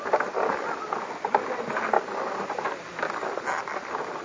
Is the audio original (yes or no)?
yes